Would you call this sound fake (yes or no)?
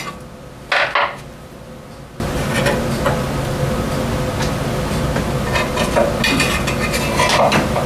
no